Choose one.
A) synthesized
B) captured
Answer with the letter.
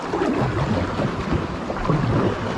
B